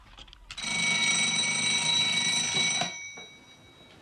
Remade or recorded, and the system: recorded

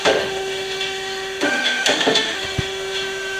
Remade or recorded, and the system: remade, autoencoder, DAC-VAE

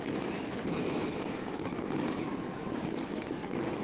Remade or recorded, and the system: remade, autoencoder, DAC-VAE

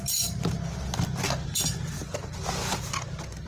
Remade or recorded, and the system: recorded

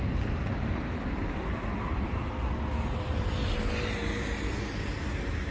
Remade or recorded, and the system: recorded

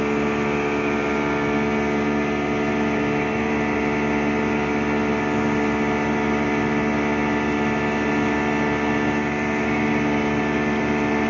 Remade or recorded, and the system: recorded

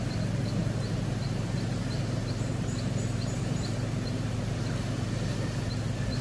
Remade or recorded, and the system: recorded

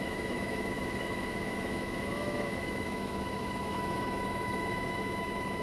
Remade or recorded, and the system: remade, autoencoder, DAC-VAE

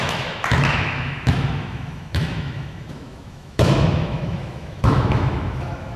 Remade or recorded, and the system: remade, autoencoder, DAC-VAE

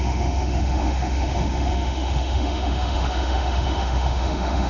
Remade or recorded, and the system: remade, autoencoder, DAC-VAE